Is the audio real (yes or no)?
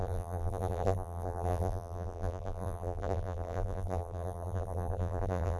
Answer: no